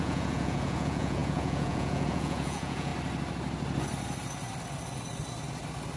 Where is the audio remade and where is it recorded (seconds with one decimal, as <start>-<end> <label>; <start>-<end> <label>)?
0.0-2.9 remade; 2.9-6.0 recorded